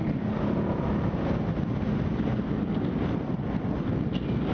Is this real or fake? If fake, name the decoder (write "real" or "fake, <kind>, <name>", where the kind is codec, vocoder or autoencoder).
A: real